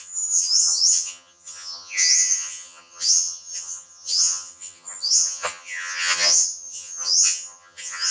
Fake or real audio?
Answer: fake